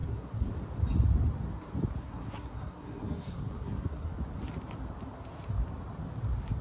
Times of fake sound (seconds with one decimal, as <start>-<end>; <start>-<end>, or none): 0.0-0.5; 2.0-4.1